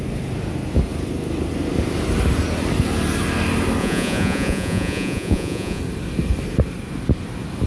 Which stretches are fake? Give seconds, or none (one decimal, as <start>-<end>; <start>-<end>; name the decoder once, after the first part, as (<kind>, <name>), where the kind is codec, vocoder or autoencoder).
3.8-5.8 (vocoder, Vocos)